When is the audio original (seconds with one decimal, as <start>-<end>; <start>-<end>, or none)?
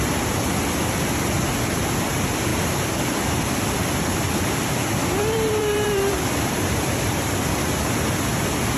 0.0-2.5; 7.3-8.8